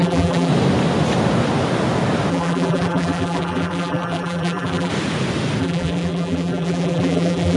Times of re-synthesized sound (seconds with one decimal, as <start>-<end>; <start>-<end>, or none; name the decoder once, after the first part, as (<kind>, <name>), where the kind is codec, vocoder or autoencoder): 0.0-0.5 (vocoder, BigVGAN v2); 2.3-4.9; 5.6-7.6